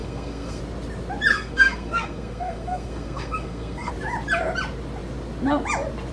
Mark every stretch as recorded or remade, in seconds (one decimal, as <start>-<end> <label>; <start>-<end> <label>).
0.0-0.6 remade; 0.6-1.3 recorded; 1.3-3.9 remade; 3.9-6.1 recorded

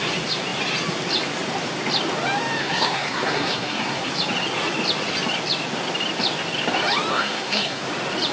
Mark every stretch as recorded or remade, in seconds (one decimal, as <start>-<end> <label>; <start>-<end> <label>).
0.0-2.6 recorded; 2.6-4.1 remade; 4.1-7.1 recorded; 7.1-7.8 remade; 7.8-8.3 recorded